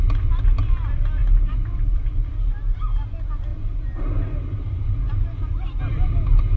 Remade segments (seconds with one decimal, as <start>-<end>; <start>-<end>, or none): 3.5-5.8